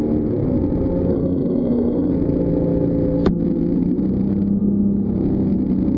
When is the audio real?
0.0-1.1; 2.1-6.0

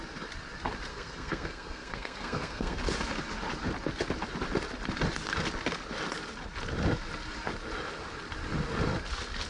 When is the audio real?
0.0-0.9; 2.8-9.5